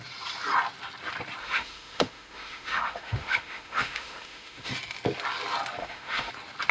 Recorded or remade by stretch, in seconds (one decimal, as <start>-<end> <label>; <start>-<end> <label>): 0.0-1.4 recorded; 1.4-4.7 remade; 4.7-5.8 recorded; 5.8-6.3 remade; 6.3-6.7 recorded